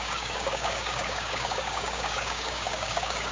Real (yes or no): no